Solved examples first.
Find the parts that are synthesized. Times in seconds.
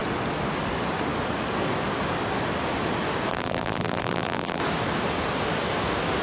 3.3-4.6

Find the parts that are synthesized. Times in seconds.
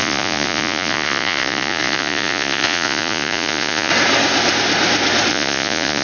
0.0-3.9; 5.3-6.0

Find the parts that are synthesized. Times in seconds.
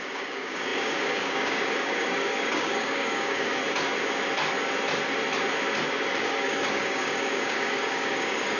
0.0-3.6; 6.2-8.6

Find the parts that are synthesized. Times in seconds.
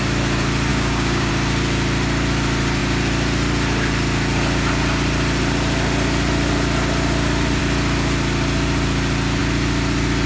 0.7-1.3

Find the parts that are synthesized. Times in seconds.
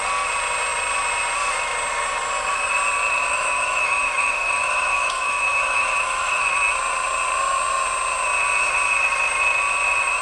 3.2-6.4